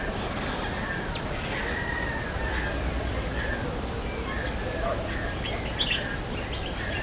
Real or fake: real